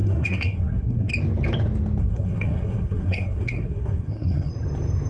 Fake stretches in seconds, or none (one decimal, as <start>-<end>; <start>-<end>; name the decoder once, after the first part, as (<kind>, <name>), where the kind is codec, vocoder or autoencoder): 0.0-1.1 (codec, SNAC); 2.0-4.5

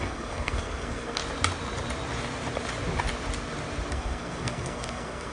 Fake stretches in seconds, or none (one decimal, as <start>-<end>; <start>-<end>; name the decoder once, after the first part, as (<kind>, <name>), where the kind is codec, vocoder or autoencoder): 0.0-1.2 (codec, SNAC); 3.9-5.3

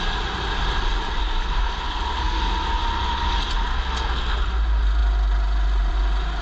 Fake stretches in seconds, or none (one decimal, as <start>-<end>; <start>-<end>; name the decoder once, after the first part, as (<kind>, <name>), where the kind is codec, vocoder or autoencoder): 1.2-2.4 (codec, SNAC); 3.7-4.4

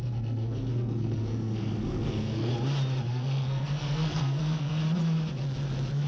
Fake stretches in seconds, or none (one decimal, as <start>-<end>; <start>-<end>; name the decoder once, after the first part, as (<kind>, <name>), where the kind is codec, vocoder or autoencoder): 0.0-2.5 (codec, SNAC); 3.1-4.8

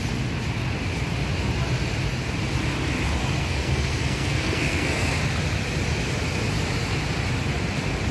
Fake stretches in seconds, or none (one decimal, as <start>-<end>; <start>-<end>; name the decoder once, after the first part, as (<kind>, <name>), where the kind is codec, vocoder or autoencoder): 3.2-5.1 (codec, SNAC)

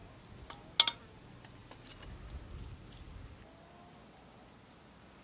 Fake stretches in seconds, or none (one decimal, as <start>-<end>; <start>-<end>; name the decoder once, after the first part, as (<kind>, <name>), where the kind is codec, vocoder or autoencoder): none

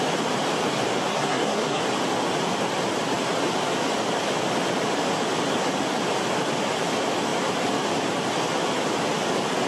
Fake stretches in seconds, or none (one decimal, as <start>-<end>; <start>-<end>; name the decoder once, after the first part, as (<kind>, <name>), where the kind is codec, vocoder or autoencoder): 1.1-1.8 (codec, SNAC)